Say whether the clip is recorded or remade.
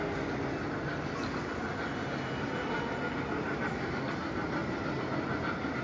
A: recorded